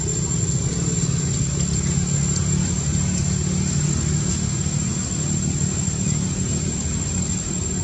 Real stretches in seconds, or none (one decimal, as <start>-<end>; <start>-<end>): 0.0-7.8